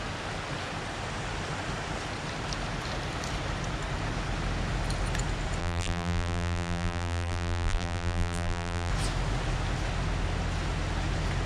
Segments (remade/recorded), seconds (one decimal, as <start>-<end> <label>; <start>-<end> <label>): 0.0-5.6 recorded; 5.6-8.9 remade; 8.9-11.5 recorded